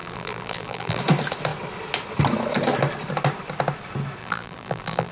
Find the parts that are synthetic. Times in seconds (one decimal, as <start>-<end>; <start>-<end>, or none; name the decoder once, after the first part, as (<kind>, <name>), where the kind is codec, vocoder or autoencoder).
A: 0.0-1.0 (vocoder, BigVGAN v2); 4.2-5.1